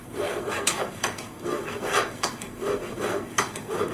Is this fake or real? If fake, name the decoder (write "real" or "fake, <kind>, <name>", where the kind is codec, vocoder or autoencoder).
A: fake, codec, SNAC